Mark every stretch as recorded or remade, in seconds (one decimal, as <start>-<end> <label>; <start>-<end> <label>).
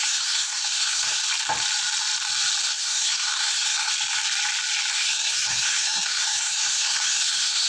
0.0-1.2 remade; 1.2-2.6 recorded; 2.6-3.9 remade; 3.9-4.9 recorded; 4.9-7.7 remade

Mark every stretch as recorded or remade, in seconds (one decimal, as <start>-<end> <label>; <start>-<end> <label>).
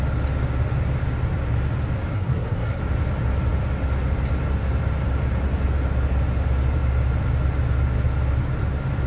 0.0-2.1 recorded; 2.1-2.8 remade; 2.8-9.1 recorded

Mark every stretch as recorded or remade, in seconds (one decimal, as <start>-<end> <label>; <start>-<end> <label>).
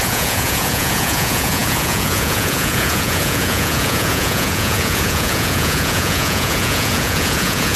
0.0-7.8 remade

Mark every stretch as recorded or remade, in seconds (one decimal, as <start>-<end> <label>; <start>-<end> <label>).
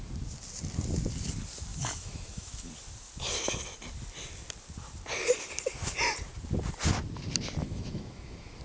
0.0-1.7 recorded; 1.7-2.7 remade; 2.7-7.6 recorded; 7.6-8.6 remade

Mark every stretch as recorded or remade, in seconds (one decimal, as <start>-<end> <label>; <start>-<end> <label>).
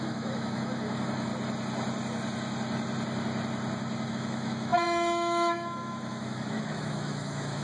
0.0-1.3 remade; 1.3-4.1 recorded; 4.1-7.6 remade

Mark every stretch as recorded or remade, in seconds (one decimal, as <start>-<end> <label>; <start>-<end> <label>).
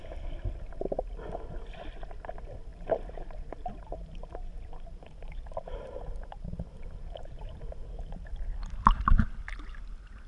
0.0-2.7 recorded; 2.7-7.6 remade; 7.6-10.3 recorded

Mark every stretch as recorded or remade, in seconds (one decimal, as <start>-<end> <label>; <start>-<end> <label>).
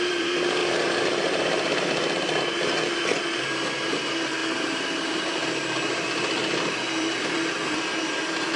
0.0-8.6 remade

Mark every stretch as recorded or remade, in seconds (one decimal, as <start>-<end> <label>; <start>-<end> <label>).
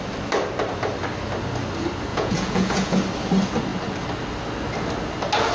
0.0-2.1 recorded; 2.1-3.0 remade; 3.0-5.5 recorded